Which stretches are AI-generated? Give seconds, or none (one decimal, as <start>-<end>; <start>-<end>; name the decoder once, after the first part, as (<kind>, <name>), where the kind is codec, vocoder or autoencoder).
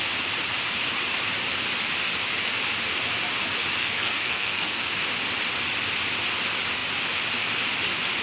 3.8-4.9 (codec, SNAC)